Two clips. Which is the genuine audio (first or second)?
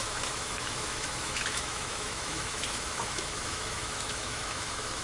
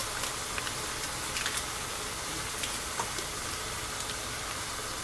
second